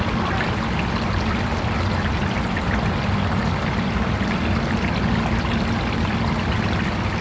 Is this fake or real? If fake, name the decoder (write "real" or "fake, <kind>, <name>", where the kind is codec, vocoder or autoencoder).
real